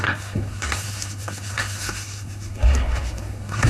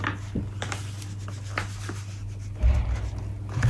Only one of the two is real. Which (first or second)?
second